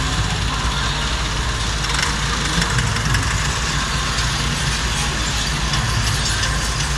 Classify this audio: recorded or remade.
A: recorded